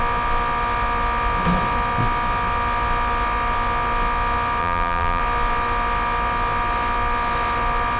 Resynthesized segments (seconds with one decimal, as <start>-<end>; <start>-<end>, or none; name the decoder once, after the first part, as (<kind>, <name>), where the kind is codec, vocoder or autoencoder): 4.6-5.2 (vocoder, BigVGAN v2)